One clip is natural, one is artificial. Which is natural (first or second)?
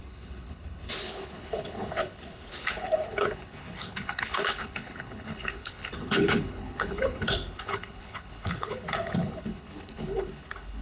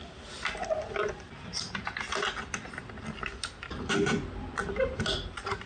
second